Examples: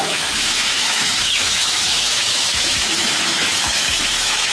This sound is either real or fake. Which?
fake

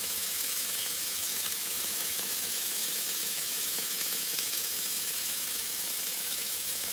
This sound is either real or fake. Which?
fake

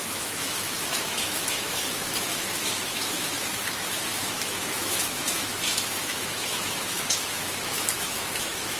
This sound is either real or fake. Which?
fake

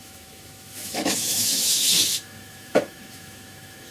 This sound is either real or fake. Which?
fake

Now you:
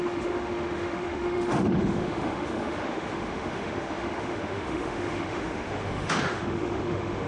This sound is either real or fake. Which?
fake